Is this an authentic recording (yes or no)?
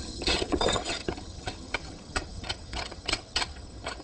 no